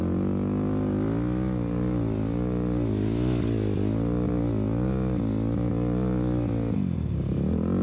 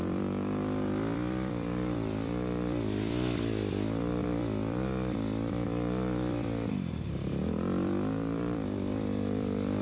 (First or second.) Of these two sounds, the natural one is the first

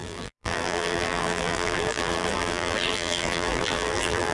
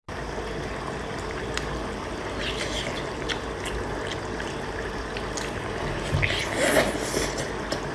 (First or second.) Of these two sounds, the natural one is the second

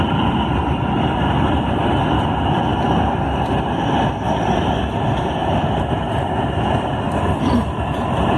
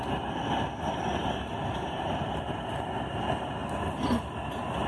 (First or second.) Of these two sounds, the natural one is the second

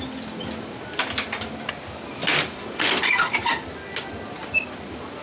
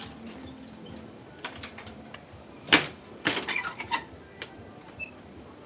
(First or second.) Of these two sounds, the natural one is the first